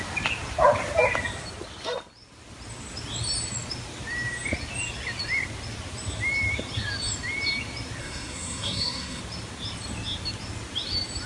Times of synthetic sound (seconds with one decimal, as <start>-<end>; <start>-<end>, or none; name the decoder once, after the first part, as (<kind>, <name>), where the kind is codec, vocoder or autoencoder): 8.0-9.2 (codec, SNAC)